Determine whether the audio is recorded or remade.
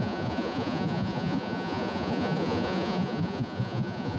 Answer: remade